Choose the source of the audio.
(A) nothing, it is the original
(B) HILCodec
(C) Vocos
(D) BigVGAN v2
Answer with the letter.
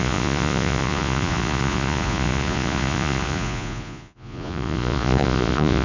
C